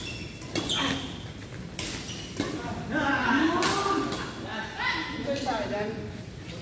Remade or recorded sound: recorded